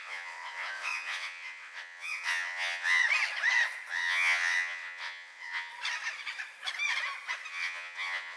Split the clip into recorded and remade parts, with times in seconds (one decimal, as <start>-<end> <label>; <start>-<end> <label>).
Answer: 0.0-3.0 remade; 3.0-3.9 recorded; 3.9-5.7 remade; 5.7-7.5 recorded; 7.5-8.4 remade